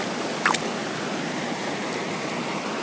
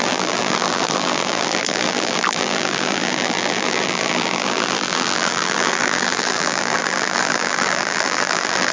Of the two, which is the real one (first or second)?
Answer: first